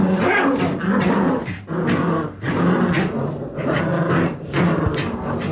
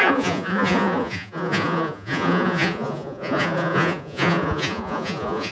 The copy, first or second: second